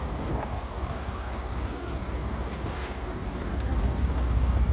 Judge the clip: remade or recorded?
remade